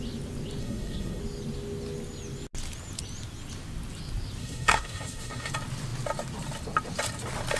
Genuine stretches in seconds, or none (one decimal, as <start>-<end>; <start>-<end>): 0.0-0.6; 1.2-4.4; 5.5-7.6